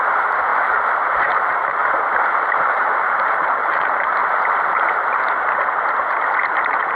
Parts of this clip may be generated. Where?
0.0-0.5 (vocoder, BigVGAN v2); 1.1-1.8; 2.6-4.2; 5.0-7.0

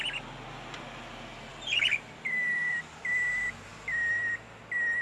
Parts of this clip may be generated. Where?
1.5-3.0 (vocoder, BigVGAN v2)

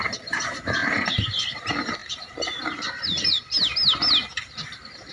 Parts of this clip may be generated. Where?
0.0-3.6 (vocoder, BigVGAN v2)

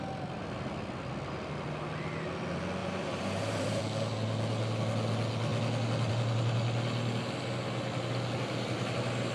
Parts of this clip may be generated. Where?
2.8-3.8 (vocoder, BigVGAN v2)

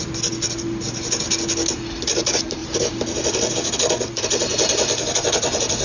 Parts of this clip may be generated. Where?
none